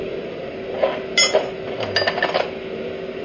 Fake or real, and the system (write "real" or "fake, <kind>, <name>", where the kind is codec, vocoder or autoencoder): real